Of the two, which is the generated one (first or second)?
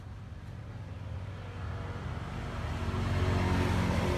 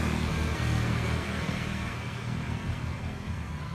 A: second